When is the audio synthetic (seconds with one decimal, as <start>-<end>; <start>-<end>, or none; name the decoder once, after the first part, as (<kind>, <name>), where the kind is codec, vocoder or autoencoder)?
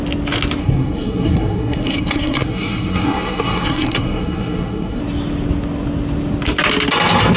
0.6-5.0 (codec, SNAC)